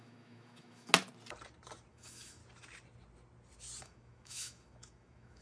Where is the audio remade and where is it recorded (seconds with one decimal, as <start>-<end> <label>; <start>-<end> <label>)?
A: 0.0-0.9 remade; 0.9-1.9 recorded; 1.9-2.4 remade; 2.4-3.8 recorded; 3.8-5.4 remade